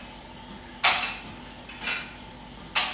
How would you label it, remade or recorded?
recorded